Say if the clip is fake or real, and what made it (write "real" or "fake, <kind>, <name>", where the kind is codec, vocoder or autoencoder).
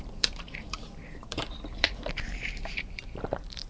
fake, vocoder, BigVGAN v2